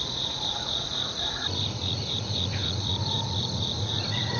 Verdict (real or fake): fake